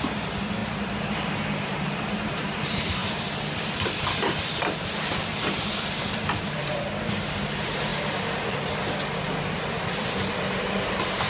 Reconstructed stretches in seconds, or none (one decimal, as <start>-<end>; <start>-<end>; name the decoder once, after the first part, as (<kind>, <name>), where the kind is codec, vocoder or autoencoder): 0.0-11.3 (vocoder, BigVGAN v2)